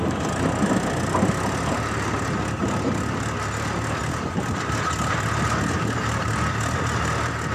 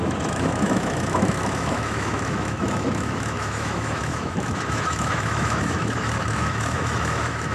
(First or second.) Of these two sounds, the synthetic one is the second